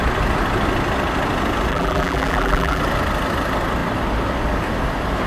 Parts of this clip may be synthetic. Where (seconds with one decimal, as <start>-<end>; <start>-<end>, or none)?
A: 1.7-2.8